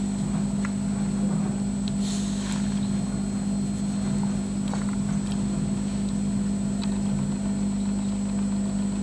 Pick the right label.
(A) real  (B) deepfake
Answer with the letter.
A